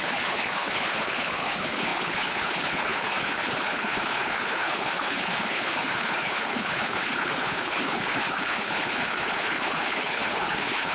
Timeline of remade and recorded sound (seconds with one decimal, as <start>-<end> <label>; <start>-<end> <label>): 0.0-10.9 remade